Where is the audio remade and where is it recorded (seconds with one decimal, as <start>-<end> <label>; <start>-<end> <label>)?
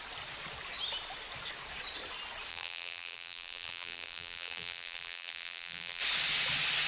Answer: 0.0-2.5 recorded; 2.5-6.0 remade; 6.0-6.9 recorded